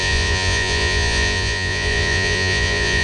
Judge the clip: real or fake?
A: fake